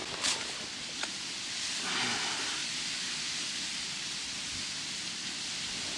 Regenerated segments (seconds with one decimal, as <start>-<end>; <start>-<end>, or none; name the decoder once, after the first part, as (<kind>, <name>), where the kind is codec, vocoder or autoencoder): none